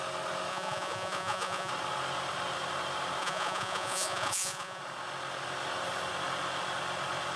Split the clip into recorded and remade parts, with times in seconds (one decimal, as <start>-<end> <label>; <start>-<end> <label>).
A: 0.0-0.5 recorded; 0.5-1.7 remade; 1.7-3.2 recorded; 3.2-4.8 remade; 4.8-7.4 recorded

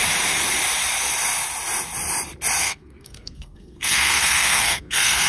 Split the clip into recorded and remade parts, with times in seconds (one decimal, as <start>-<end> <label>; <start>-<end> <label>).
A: 0.0-2.6 recorded; 2.6-5.3 remade